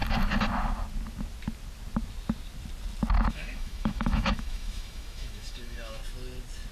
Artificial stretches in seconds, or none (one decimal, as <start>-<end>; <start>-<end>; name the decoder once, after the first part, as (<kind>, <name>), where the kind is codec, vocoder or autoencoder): 3.3-6.0 (autoencoder, DAC-VAE)